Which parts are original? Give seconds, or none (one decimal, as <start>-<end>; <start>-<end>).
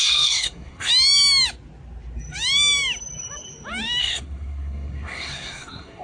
0.9-4.0